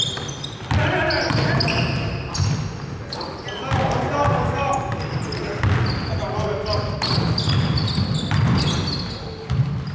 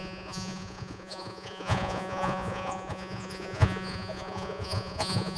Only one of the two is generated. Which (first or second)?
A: second